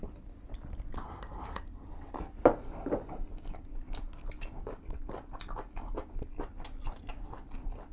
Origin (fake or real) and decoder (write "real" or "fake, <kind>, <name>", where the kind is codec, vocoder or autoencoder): real